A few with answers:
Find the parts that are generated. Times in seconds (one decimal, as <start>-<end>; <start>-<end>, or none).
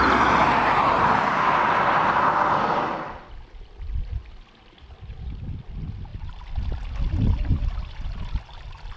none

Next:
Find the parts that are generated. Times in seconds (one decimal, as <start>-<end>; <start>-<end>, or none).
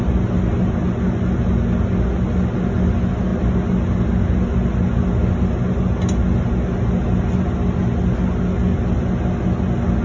none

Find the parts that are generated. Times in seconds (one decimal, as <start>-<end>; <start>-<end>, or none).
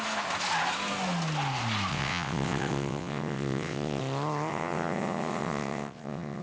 1.9-4.0; 4.5-6.4